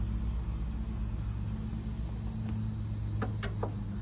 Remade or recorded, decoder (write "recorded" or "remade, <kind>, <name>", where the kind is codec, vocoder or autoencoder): recorded